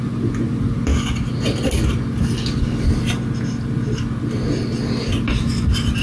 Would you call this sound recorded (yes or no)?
yes